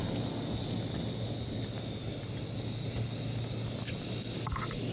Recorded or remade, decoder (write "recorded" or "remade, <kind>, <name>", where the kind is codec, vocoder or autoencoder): recorded